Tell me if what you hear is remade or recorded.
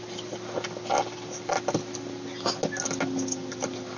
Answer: recorded